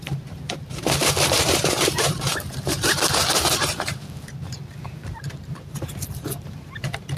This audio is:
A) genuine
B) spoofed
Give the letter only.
B